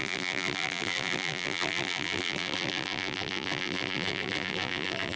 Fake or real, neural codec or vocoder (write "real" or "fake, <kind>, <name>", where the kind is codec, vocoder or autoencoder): fake, vocoder, BigVGAN v2